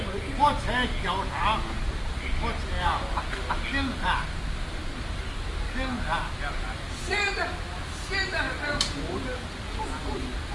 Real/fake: real